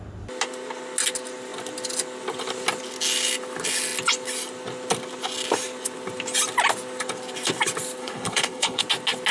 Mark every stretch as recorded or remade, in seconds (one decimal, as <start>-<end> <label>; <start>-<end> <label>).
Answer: 0.0-8.0 recorded; 8.0-8.8 remade; 8.8-9.3 recorded